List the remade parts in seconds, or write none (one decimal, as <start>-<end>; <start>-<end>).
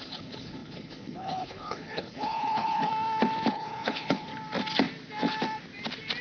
0.0-2.9; 3.5-4.3